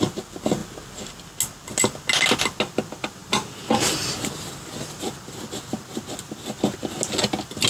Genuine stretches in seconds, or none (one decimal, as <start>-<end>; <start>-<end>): 0.0-7.7